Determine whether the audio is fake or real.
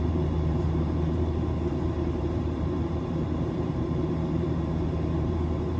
fake